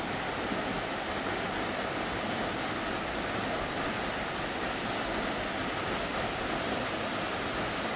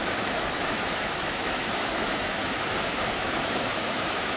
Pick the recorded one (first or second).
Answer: first